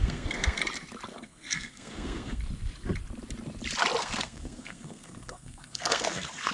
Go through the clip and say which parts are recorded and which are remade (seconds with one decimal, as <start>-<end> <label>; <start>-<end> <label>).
0.0-0.6 remade; 0.6-1.1 recorded; 1.1-2.4 remade; 2.4-4.0 recorded; 4.0-6.5 remade